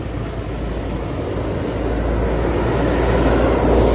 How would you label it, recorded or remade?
recorded